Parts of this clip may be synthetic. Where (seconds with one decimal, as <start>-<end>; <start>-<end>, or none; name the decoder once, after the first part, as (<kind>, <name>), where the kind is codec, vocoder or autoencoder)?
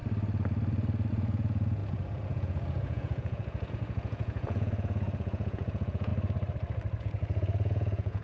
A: 1.1-6.1 (vocoder, Vocos); 7.0-8.2